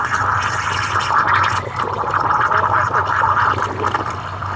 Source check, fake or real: real